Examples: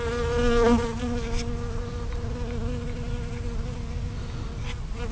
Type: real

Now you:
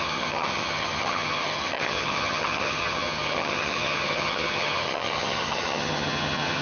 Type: fake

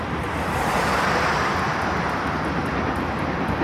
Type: real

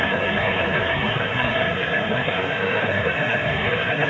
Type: fake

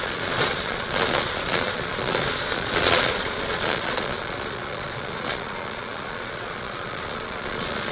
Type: fake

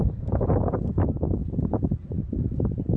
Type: fake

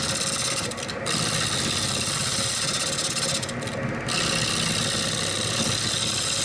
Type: real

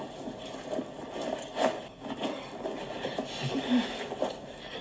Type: real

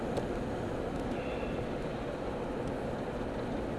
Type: real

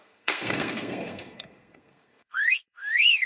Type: fake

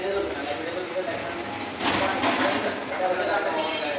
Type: real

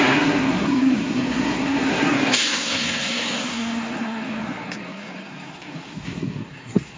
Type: fake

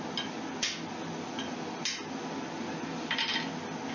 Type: real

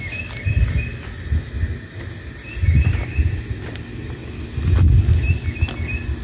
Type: real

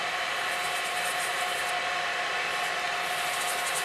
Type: real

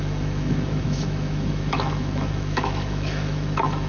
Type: fake